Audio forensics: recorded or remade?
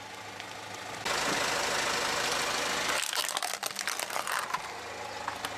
recorded